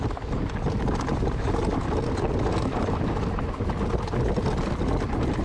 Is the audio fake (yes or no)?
no